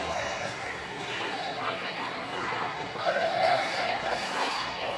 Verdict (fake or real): fake